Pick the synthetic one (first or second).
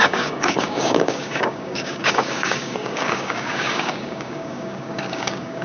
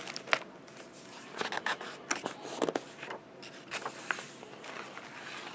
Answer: first